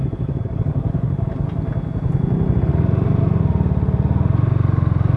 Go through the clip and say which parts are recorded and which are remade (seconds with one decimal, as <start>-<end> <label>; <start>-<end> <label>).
0.0-1.1 remade; 1.1-5.2 recorded